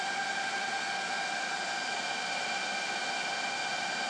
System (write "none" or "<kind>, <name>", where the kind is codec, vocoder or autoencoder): none